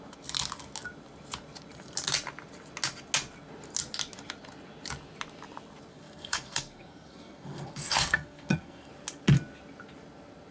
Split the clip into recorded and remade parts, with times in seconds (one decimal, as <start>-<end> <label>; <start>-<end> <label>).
0.0-5.9 recorded; 5.9-8.9 remade; 8.9-10.5 recorded